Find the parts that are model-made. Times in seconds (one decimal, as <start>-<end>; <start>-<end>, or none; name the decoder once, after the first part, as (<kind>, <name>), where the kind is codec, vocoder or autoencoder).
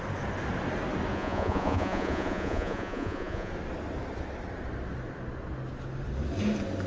1.1-3.5 (vocoder, Vocos)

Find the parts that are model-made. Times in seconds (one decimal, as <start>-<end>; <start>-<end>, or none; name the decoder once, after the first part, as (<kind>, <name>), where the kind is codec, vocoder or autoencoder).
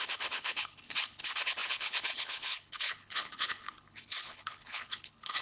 0.0-5.4 (codec, HILCodec)